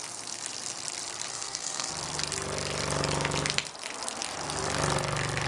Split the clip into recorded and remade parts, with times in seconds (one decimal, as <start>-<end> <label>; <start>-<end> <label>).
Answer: 0.0-1.3 recorded; 1.3-1.9 remade; 1.9-5.5 recorded